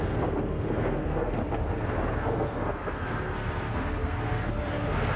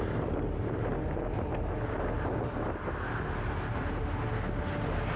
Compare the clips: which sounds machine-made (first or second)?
first